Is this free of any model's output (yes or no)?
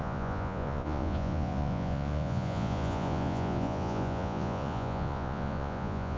no